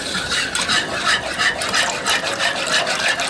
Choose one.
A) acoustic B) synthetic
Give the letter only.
A